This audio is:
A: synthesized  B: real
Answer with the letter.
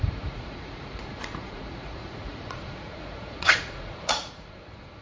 A